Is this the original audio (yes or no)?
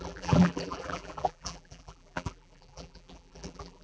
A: no